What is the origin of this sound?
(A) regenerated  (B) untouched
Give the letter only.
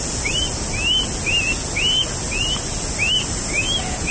B